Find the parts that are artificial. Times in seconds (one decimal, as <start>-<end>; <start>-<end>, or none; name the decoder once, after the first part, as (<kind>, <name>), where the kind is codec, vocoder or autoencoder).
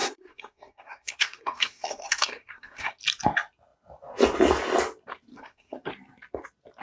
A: 0.0-3.0 (codec, SNAC); 5.3-5.9